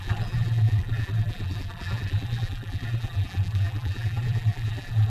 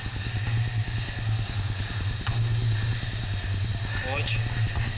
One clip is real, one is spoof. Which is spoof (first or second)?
first